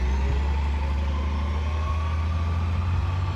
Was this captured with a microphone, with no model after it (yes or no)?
yes